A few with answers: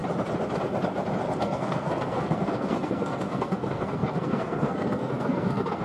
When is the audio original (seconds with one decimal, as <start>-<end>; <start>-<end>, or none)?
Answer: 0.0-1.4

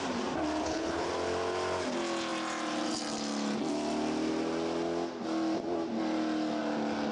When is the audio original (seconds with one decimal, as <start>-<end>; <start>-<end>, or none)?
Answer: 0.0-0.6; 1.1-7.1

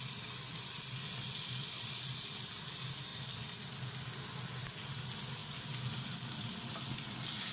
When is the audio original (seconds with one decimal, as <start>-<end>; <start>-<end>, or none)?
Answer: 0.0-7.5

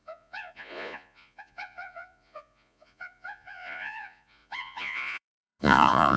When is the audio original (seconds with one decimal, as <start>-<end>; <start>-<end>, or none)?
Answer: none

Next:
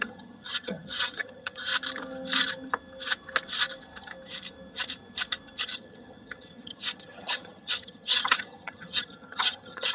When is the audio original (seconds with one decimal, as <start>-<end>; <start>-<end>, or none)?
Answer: 1.7-5.6

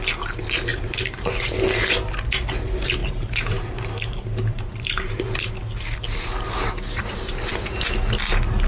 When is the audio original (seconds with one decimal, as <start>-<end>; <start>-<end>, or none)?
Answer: 0.0-0.7; 1.3-3.0; 5.5-6.3; 7.1-8.7

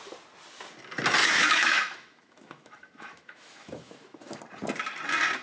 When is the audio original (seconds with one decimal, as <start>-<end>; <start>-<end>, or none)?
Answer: 0.0-1.2; 4.4-5.4

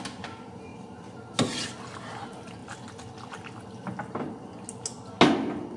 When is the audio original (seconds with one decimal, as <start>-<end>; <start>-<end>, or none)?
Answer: 0.0-5.8